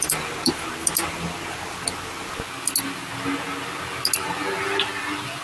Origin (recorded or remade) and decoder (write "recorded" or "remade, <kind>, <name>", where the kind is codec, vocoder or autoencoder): recorded